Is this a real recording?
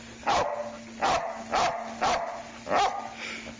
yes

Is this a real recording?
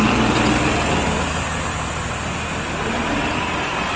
yes